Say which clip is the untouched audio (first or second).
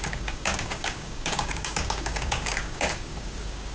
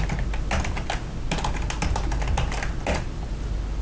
second